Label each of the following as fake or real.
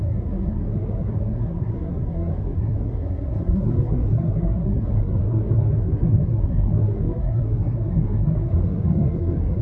fake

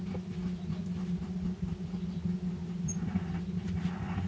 real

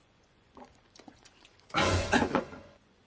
fake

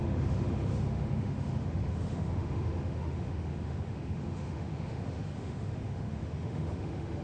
fake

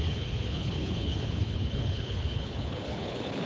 fake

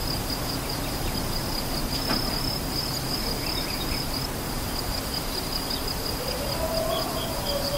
real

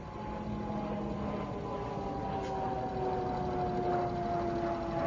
real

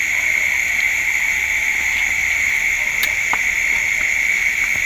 real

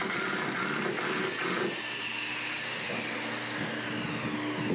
real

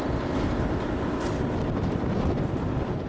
real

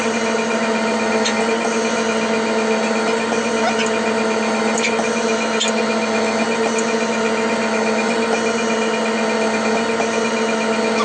real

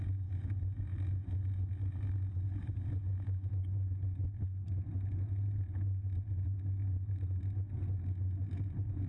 real